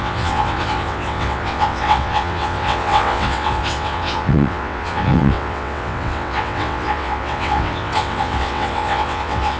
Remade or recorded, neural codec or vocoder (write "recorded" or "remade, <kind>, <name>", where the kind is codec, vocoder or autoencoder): remade, vocoder, WaveNeXt